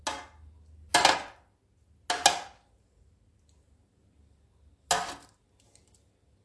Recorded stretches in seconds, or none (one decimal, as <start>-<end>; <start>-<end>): 0.0-6.4